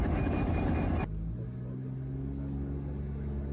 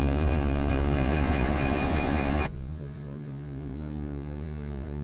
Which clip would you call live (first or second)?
first